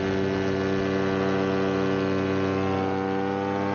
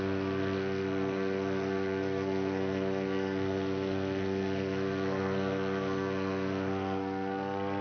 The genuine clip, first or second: first